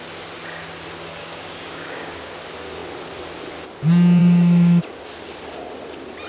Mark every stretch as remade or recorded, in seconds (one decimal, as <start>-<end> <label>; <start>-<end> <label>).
0.0-1.2 recorded; 1.2-2.3 remade; 2.3-4.2 recorded; 4.2-4.8 remade; 4.8-6.3 recorded